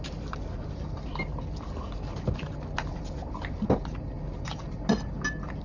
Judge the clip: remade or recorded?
recorded